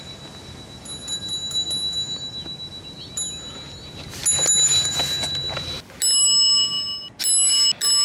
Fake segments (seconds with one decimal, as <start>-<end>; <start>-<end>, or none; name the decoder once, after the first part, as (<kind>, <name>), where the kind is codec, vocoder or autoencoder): none